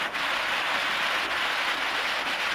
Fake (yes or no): no